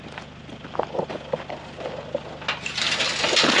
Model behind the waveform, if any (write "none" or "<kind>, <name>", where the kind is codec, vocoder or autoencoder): none